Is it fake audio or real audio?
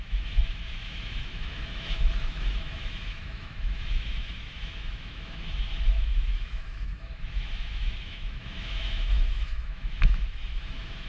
fake